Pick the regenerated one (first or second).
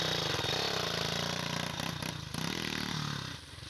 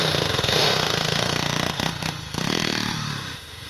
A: second